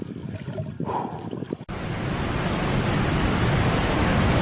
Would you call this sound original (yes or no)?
yes